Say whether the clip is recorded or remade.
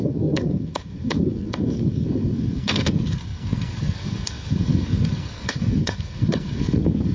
remade